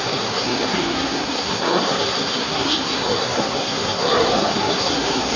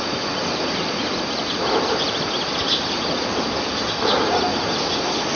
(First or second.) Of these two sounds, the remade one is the first